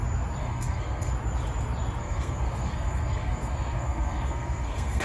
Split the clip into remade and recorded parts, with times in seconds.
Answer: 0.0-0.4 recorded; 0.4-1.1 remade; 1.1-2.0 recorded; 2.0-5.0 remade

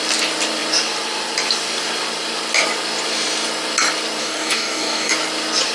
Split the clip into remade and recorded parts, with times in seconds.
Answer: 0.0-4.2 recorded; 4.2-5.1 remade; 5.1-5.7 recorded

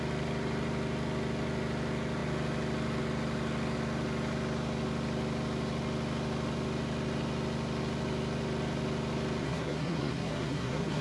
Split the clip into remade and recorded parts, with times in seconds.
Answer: 0.0-9.4 recorded; 9.4-11.0 remade

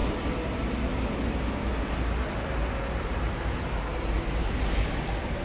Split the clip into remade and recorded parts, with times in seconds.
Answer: 0.0-5.4 recorded

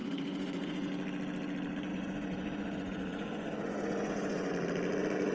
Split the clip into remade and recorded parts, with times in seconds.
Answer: 0.0-0.9 remade; 0.9-1.9 recorded; 1.9-4.5 remade; 4.5-5.3 recorded

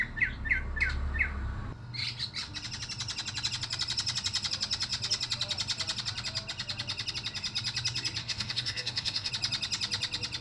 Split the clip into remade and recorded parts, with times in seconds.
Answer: 0.0-8.2 recorded; 8.2-9.3 remade; 9.3-10.4 recorded

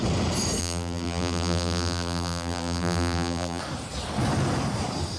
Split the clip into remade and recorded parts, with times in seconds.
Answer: 0.0-0.6 recorded; 0.6-3.6 remade; 3.6-5.2 recorded